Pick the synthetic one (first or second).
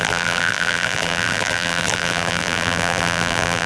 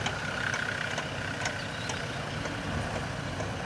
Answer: first